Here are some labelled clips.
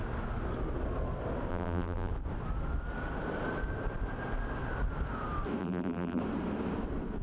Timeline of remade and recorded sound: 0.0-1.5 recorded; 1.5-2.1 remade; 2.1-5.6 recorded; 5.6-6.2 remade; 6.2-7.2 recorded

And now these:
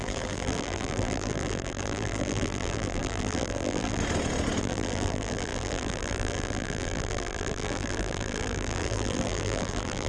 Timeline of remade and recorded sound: 0.0-4.0 remade; 4.0-4.6 recorded; 4.6-10.1 remade

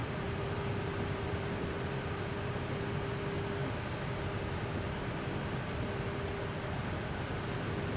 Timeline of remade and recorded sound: 0.0-2.7 remade; 2.7-8.0 recorded

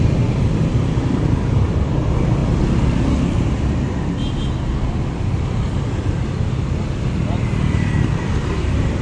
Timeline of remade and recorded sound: 0.0-2.4 remade; 2.4-7.0 recorded; 7.0-9.0 remade